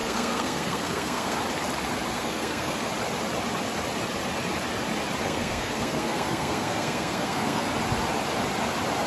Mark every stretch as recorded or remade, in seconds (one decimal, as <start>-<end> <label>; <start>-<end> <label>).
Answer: 0.0-1.4 remade; 1.4-2.1 recorded; 2.1-2.9 remade; 2.9-5.2 recorded; 5.2-7.7 remade; 7.7-9.1 recorded